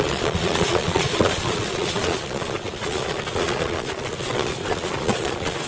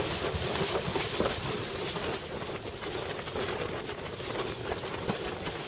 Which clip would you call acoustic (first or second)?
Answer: second